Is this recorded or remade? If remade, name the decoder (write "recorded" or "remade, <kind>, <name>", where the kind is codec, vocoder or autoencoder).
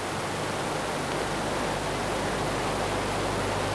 recorded